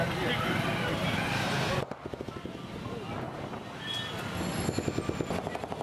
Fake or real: real